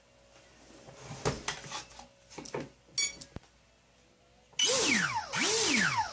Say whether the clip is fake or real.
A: real